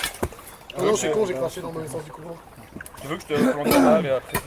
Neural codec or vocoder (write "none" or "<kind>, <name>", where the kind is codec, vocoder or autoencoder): none